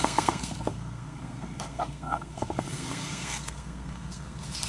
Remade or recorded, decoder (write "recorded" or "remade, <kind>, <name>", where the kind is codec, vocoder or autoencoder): remade, codec, SNAC